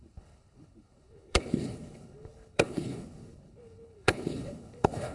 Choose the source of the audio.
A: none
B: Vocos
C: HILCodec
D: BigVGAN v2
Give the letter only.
C